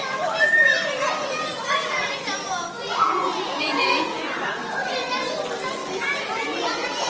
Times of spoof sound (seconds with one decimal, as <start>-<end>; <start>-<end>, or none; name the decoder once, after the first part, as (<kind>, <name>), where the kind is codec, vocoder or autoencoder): 1.2-2.2 (vocoder, Vocos); 2.9-4.4; 5.8-7.1